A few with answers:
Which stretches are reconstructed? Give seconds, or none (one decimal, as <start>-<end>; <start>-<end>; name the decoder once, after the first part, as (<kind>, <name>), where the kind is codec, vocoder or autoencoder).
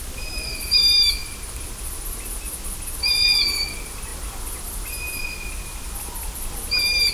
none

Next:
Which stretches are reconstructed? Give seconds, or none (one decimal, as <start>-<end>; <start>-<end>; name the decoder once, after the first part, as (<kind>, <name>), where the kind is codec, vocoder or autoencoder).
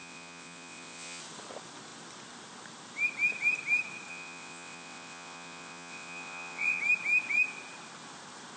0.0-1.2 (vocoder, WaveNeXt); 4.1-6.8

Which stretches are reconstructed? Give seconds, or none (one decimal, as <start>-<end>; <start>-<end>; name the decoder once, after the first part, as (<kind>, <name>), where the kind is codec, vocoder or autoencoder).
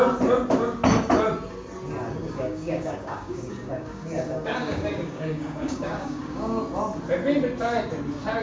2.2-6.6 (codec, DAC)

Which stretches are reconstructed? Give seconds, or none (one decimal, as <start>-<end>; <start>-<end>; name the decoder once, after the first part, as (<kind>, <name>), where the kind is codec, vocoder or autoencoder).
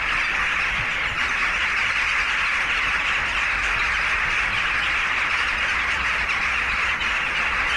none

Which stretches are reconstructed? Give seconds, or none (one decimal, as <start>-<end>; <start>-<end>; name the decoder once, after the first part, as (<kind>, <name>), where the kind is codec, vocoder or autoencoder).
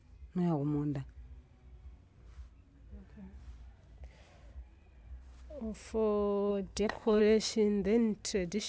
6.5-7.2 (codec, SNAC)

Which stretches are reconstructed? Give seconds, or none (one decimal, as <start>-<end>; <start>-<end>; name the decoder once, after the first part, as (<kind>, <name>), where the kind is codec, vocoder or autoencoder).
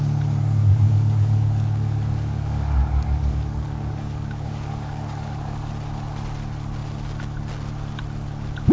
0.6-5.7 (codec, DAC)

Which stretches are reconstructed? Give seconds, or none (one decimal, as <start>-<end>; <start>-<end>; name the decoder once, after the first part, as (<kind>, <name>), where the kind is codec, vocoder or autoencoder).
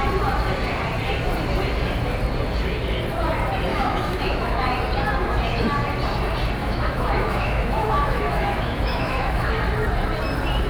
3.7-4.7 (autoencoder, DAC-VAE); 6.6-9.5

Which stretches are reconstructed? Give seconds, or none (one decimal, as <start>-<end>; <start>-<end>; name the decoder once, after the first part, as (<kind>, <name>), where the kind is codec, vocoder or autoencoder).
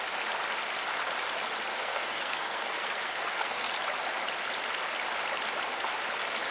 1.7-3.7 (codec, SNAC)